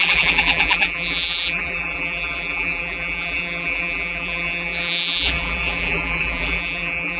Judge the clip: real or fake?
fake